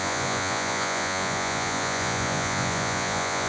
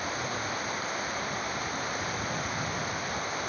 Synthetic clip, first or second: first